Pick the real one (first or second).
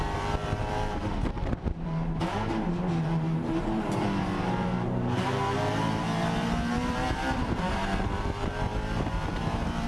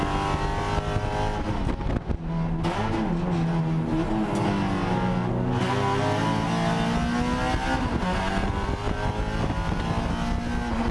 second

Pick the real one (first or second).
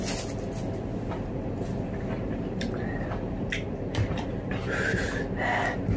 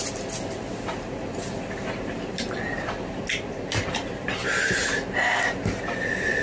second